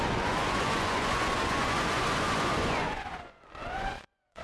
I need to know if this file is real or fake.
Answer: fake